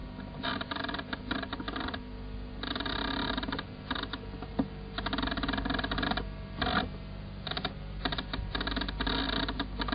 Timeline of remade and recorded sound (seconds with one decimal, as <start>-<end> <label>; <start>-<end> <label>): 0.0-9.9 recorded